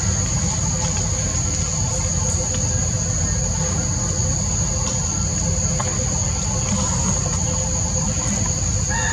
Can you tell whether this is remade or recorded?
recorded